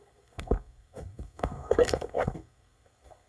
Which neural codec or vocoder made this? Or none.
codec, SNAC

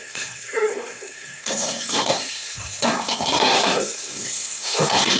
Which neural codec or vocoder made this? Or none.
codec, SNAC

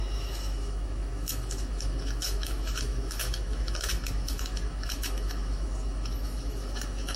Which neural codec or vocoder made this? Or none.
autoencoder, DAC-VAE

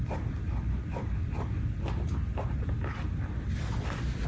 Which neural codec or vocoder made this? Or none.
none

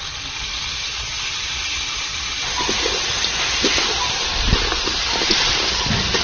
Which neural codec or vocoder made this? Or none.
none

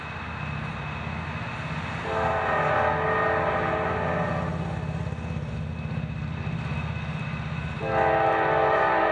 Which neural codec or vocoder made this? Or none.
none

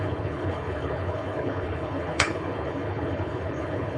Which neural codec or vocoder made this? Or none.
codec, HILCodec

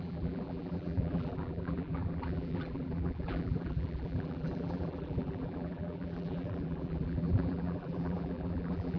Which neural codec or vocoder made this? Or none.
vocoder, BigVGAN v2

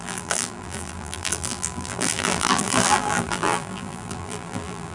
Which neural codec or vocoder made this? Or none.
vocoder, BigVGAN v2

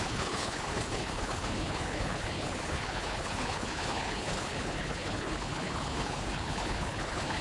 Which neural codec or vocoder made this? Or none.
codec, HILCodec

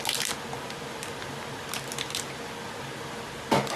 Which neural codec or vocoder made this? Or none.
none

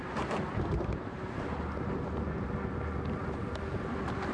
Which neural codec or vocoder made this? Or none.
none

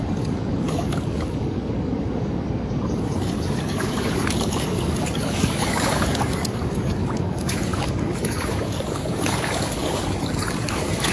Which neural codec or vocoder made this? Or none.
codec, DAC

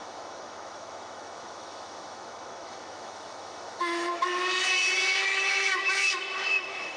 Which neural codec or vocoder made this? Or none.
autoencoder, DAC-VAE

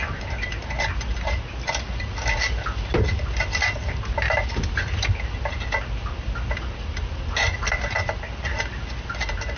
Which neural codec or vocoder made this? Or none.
none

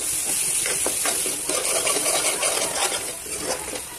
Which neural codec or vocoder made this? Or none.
none